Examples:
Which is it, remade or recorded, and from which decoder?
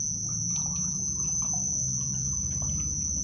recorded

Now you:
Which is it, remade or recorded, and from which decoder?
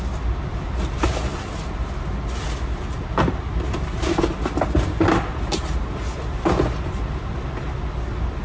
recorded